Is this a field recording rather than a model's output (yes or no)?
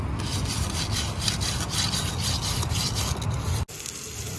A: yes